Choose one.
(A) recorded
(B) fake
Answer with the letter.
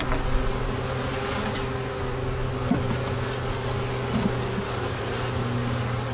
A